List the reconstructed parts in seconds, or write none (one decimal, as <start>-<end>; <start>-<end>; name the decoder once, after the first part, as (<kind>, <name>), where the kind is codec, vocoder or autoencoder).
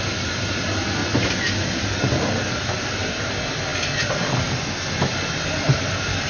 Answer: none